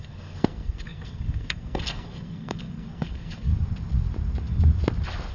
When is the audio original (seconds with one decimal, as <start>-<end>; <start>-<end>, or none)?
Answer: 3.5-5.3